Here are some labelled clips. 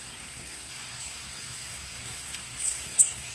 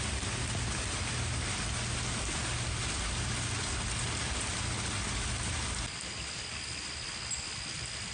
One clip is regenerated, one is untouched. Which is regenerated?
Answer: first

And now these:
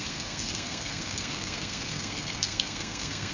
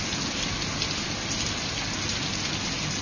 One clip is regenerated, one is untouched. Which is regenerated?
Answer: first